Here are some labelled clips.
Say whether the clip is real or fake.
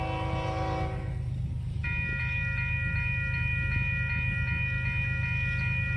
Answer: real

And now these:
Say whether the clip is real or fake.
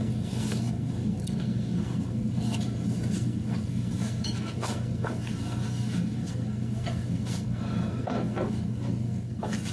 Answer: fake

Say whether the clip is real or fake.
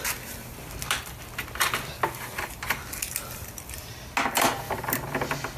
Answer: real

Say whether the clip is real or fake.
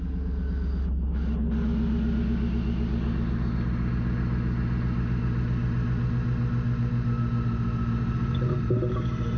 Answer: real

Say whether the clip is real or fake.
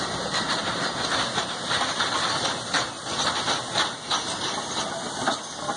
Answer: real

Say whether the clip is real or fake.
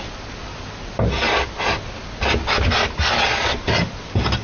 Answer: real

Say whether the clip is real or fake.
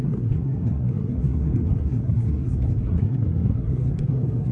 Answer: fake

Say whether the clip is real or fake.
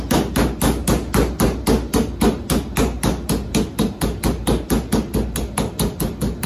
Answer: real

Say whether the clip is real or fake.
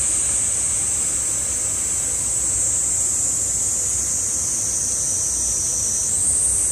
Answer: real